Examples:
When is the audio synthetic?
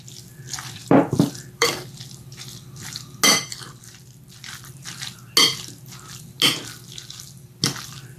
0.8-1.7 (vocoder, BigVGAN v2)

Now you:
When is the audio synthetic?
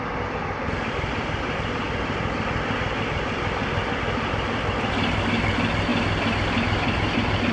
none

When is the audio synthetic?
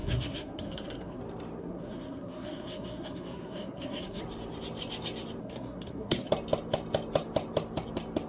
0.0-1.2 (codec, SNAC); 1.6-4.2; 5.4-6.3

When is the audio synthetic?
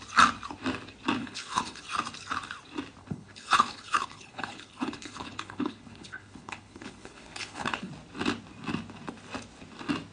1.2-1.8 (codec, HILCodec); 3.0-7.9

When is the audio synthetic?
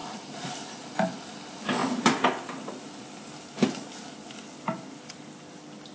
none